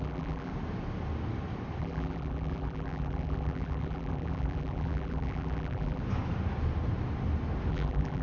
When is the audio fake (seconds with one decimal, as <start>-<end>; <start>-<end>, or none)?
0.0-0.5; 1.8-6.0; 7.7-8.2